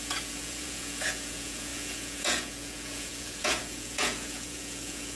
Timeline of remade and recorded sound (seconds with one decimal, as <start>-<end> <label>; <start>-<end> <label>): 0.0-5.2 remade

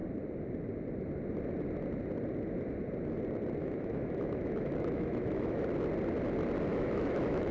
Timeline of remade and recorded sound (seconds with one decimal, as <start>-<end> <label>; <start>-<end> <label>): 0.0-3.6 recorded; 3.6-5.6 remade; 5.6-6.7 recorded; 6.7-7.5 remade

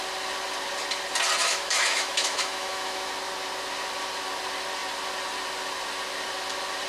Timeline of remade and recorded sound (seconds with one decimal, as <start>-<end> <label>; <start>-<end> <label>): 0.0-1.4 recorded; 1.4-3.1 remade; 3.1-6.9 recorded

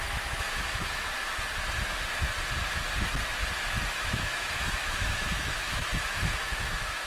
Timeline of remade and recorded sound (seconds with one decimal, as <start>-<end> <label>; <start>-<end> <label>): 0.0-1.1 remade; 1.1-3.9 recorded; 3.9-7.1 remade

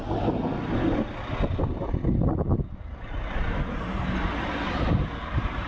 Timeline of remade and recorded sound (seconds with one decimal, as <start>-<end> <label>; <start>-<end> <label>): 0.0-3.1 recorded; 3.1-5.7 remade